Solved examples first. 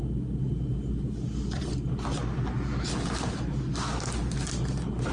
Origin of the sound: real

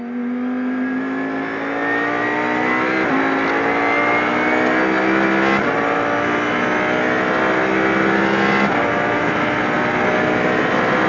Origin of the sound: real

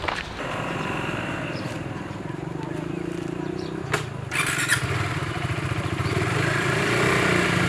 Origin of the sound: fake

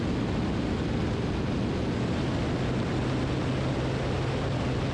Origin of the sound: real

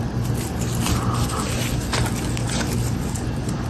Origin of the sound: real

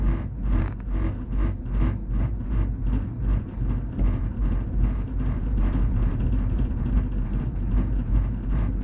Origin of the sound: fake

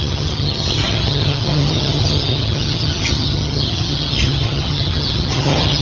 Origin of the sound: fake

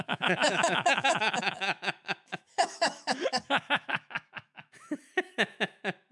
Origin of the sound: fake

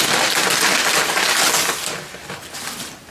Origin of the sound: real